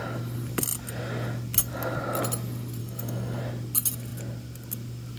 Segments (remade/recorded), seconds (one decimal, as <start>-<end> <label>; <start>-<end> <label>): 0.0-2.8 recorded; 2.8-3.4 remade; 3.4-5.2 recorded